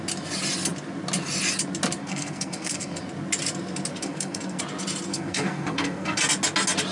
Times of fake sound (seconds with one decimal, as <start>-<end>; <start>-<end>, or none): 2.0-3.0; 3.9-4.6; 5.1-6.2